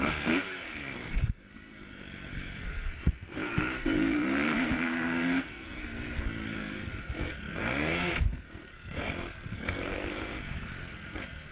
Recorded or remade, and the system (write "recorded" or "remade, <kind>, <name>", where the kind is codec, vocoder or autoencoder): remade, codec, SNAC